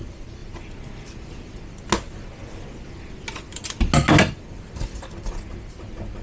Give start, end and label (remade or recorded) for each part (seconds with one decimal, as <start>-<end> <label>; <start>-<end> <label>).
0.0-6.2 recorded